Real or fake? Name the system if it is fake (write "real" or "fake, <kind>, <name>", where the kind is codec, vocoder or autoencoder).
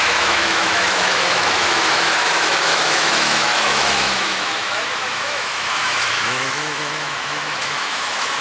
fake, autoencoder, DAC-VAE